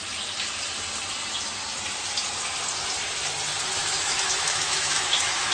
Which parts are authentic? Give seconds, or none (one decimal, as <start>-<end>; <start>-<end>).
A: 0.0-3.8